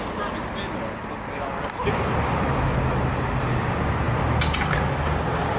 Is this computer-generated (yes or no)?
no